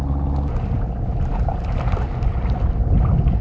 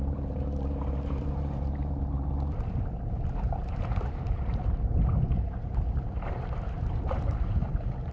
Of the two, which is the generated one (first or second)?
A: second